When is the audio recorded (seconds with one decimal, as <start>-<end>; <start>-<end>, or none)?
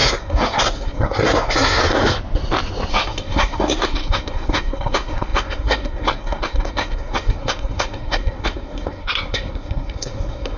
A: 1.8-2.9